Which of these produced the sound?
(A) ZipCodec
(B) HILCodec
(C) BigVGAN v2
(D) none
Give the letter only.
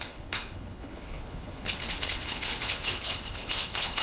B